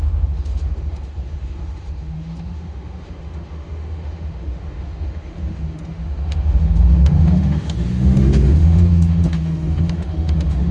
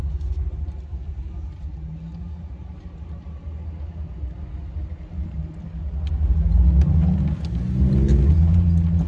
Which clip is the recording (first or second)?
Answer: second